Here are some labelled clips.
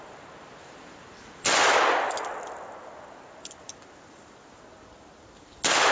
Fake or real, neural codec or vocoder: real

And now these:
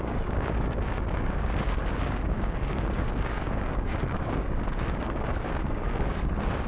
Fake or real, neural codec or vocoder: fake, codec, DAC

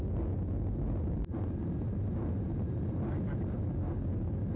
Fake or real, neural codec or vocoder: real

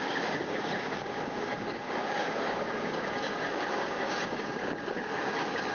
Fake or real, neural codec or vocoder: fake, codec, DAC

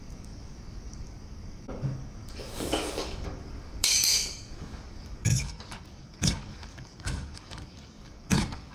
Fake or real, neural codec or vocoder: fake, codec, DAC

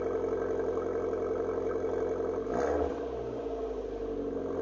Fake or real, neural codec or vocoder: real